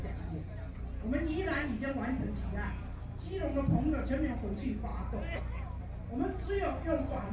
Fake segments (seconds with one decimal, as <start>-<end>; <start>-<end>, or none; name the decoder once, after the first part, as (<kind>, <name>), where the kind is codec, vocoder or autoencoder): none